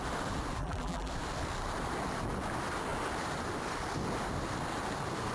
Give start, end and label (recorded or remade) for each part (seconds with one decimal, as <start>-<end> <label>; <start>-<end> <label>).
0.0-0.6 recorded; 0.6-1.1 remade; 1.1-5.3 recorded